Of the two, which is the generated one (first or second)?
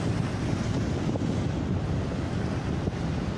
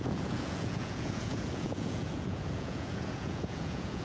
second